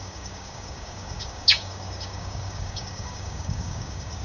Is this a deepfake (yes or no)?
yes